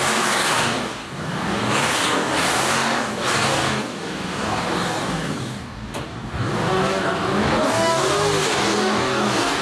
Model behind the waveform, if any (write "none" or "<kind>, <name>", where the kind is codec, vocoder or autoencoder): codec, DAC